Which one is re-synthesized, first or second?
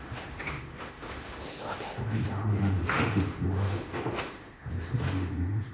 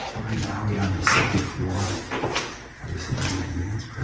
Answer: first